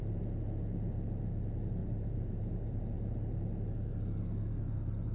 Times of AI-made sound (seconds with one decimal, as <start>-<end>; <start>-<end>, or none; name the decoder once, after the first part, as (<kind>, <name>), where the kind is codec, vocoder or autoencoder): 1.8-2.8 (vocoder, BigVGAN v2)